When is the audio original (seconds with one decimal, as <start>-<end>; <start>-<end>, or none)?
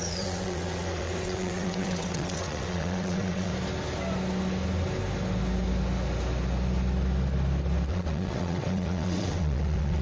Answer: 3.5-7.9